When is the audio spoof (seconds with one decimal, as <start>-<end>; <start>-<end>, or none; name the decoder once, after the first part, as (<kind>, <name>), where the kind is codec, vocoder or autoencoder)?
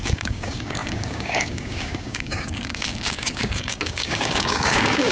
0.0-5.1 (codec, DAC)